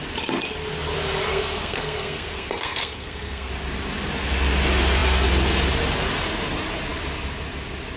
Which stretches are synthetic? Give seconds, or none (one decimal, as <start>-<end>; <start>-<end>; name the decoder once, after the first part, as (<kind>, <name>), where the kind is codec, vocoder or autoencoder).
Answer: 1.3-3.5 (codec, SNAC)